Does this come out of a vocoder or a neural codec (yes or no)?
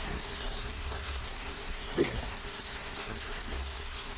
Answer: yes